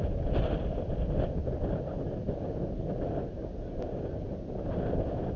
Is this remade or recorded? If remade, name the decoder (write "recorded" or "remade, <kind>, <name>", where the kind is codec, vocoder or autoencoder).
recorded